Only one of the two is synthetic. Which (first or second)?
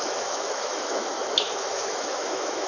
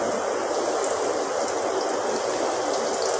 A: first